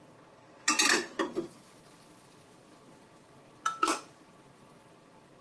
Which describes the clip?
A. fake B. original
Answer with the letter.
B